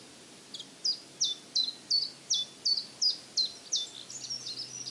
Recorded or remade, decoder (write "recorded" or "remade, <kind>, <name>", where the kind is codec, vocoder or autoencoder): recorded